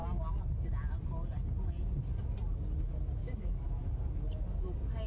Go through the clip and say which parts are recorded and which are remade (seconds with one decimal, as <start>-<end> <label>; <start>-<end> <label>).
0.0-3.2 recorded; 3.2-3.9 remade; 3.9-5.1 recorded